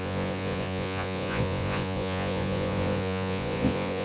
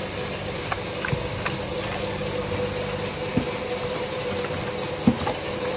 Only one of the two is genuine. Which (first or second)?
second